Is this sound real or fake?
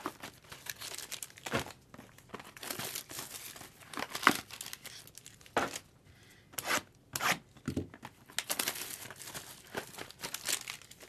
real